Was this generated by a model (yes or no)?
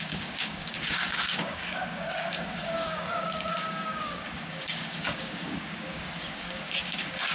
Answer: yes